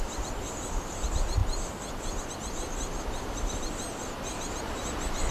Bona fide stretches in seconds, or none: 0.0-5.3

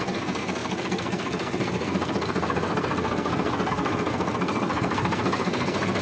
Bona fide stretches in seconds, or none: none

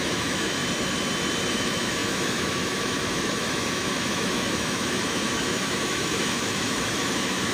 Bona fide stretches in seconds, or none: 0.6-1.5

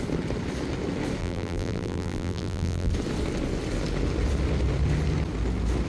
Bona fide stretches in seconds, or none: 0.0-1.2; 2.9-5.9

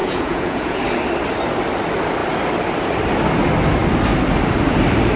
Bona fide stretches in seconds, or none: 0.8-5.2

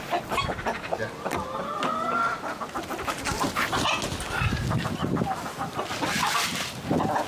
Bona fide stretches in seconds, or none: 0.0-7.3